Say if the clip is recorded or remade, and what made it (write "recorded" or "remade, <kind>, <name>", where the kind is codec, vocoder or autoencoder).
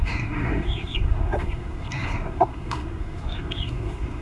remade, codec, SNAC